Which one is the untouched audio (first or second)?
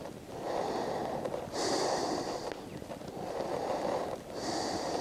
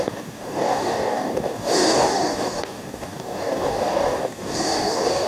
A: first